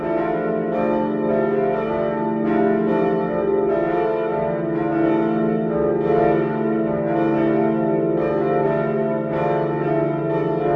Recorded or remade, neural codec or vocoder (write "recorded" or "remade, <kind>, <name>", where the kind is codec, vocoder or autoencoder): recorded